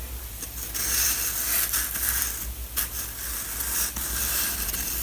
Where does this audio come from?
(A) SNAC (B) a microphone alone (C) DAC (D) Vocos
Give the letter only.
B